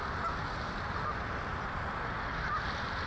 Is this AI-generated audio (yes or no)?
no